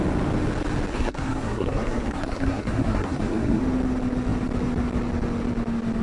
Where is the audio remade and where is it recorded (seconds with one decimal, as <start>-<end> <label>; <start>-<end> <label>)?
0.0-0.9 recorded; 0.9-3.6 remade; 3.6-6.0 recorded